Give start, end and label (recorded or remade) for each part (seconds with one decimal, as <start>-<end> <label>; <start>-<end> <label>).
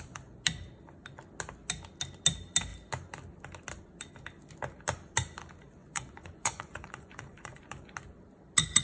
0.0-5.8 recorded; 5.8-7.6 remade; 7.6-8.8 recorded